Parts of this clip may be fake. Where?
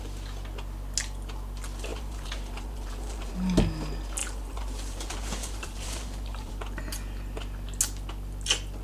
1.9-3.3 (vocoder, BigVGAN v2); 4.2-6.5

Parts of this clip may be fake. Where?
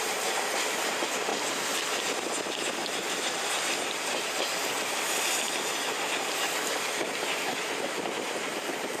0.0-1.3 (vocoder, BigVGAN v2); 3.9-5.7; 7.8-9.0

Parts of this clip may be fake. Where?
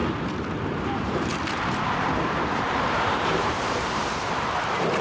0.6-5.0 (vocoder, BigVGAN v2)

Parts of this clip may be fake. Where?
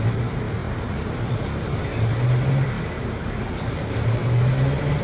0.0-4.2 (vocoder, BigVGAN v2)